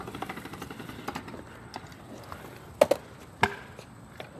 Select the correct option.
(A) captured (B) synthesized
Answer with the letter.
A